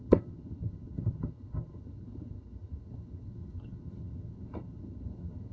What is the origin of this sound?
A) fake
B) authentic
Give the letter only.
A